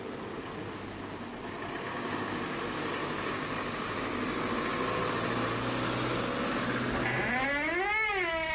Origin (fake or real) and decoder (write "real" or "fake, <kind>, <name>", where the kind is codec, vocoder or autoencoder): real